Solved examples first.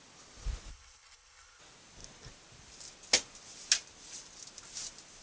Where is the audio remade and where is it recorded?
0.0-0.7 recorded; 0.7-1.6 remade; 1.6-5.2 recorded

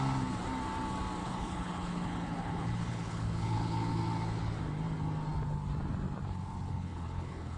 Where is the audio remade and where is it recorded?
0.0-1.2 recorded; 1.2-4.0 remade; 4.0-6.7 recorded; 6.7-7.6 remade

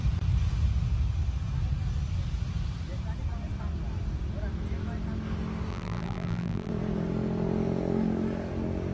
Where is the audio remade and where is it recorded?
0.0-5.7 recorded; 5.7-6.7 remade; 6.7-8.9 recorded

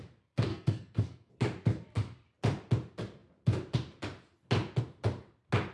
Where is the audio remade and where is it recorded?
0.0-0.5 recorded; 0.5-1.3 remade; 1.3-5.7 recorded

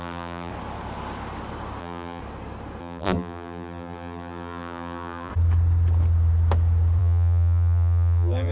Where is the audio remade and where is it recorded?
0.0-0.5 remade; 0.5-1.8 recorded; 1.8-2.2 remade; 2.2-2.8 recorded; 2.8-5.3 remade; 5.3-7.0 recorded; 7.0-8.5 remade